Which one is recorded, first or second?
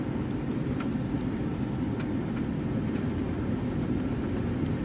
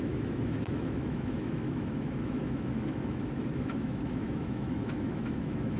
first